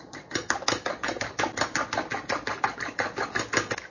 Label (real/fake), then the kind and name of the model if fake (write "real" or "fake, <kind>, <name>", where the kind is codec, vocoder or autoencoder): real